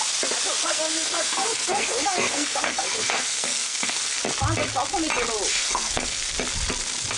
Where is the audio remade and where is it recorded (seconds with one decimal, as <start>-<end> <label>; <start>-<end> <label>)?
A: 0.0-0.6 recorded; 0.6-4.2 remade; 4.2-5.5 recorded; 5.5-6.3 remade; 6.3-7.2 recorded